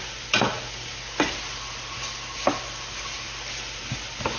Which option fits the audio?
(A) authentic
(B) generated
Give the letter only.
A